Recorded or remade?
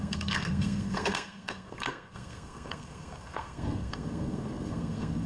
remade